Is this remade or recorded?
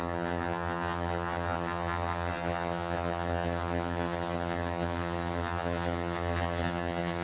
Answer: remade